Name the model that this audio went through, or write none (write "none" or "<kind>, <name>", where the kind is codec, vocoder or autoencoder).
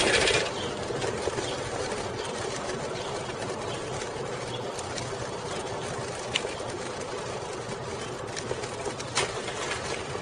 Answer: none